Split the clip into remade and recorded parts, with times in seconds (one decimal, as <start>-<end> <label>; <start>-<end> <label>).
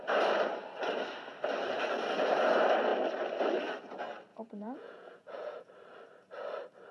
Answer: 0.0-4.3 recorded; 4.3-5.7 remade; 5.7-6.9 recorded